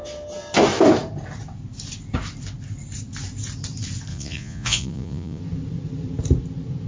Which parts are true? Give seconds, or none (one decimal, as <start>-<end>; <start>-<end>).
0.0-4.1; 5.4-6.9